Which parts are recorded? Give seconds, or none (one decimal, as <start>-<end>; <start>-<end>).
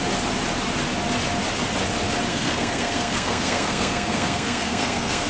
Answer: 0.0-2.3